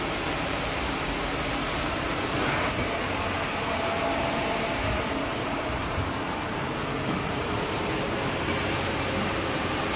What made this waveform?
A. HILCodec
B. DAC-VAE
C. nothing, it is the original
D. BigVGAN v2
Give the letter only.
D